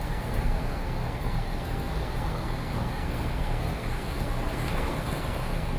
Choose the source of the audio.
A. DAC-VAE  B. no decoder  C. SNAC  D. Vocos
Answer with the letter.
C